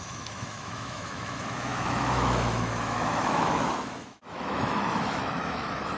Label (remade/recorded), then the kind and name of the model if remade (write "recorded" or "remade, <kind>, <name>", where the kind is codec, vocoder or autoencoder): remade, autoencoder, DAC-VAE